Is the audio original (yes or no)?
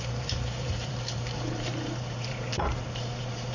no